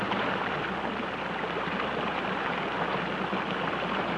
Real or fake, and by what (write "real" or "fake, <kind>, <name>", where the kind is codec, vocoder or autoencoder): real